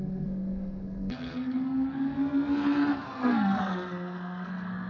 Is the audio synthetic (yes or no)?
yes